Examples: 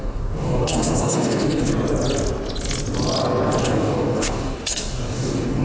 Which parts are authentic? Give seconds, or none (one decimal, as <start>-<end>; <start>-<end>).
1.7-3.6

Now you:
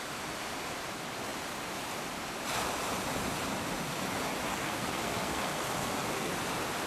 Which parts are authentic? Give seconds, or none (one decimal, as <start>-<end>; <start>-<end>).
0.0-4.5; 6.3-6.9

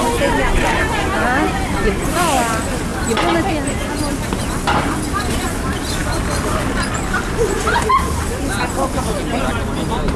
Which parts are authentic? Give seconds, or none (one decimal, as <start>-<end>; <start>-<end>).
0.0-10.2

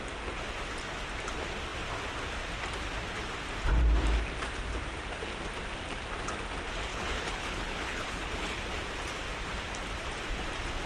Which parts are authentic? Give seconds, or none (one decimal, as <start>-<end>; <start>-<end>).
0.0-6.9; 8.6-10.9